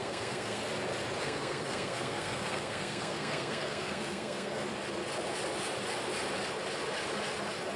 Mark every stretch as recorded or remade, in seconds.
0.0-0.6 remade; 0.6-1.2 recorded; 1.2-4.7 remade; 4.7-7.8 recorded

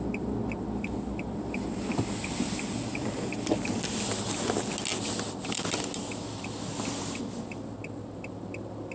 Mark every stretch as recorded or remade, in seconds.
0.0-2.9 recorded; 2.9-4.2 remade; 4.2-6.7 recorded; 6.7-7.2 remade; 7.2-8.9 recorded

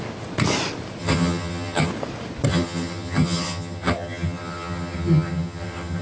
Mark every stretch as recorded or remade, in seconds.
0.0-1.0 recorded; 1.0-1.9 remade; 1.9-2.5 recorded; 2.5-6.0 remade

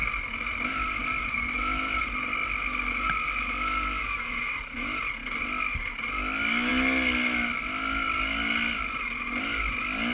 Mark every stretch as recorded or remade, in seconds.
0.0-4.0 recorded; 4.0-5.0 remade; 5.0-10.1 recorded

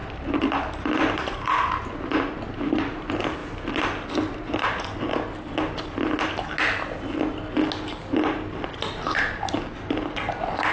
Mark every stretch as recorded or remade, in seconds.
0.0-10.7 recorded

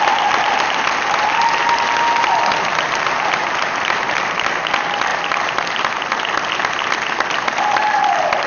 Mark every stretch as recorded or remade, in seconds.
0.0-8.5 recorded